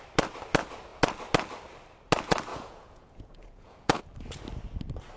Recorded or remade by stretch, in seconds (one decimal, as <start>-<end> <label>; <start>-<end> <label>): 0.0-2.5 recorded; 2.5-4.0 remade; 4.0-5.2 recorded